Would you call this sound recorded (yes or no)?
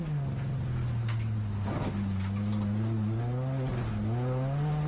yes